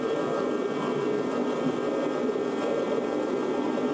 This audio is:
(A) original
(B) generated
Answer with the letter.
B